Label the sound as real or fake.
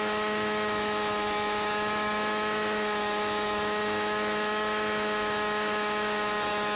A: fake